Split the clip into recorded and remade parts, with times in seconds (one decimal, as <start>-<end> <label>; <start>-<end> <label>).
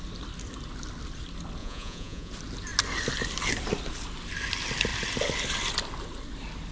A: 0.0-1.6 recorded; 1.6-2.3 remade; 2.3-6.7 recorded